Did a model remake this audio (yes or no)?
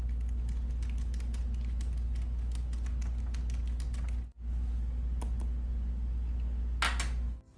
no